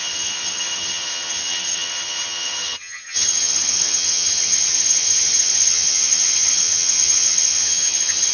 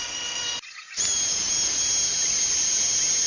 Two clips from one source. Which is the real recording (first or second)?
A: second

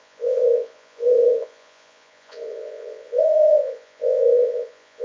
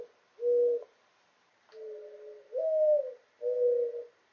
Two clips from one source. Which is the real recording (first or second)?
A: second